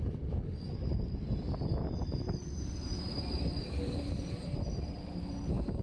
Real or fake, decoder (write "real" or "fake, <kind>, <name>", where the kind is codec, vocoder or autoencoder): real